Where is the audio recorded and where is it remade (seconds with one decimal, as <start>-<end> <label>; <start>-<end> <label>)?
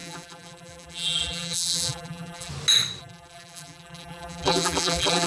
0.0-2.5 remade; 2.5-3.0 recorded; 3.0-5.3 remade